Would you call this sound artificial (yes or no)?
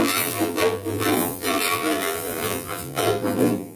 yes